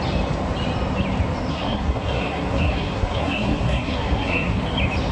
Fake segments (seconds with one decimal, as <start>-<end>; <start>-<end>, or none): 1.5-4.6